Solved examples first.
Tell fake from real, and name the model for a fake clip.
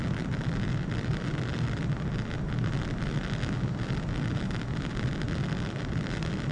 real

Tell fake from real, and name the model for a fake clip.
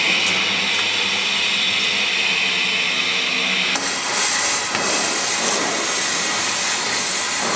real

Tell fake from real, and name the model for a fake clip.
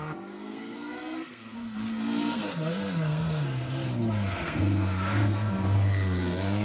fake, codec, SNAC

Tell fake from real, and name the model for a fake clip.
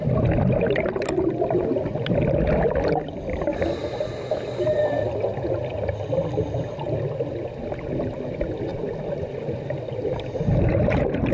real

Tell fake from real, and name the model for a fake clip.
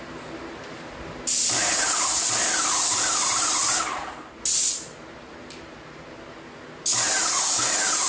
real